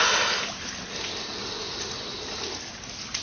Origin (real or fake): real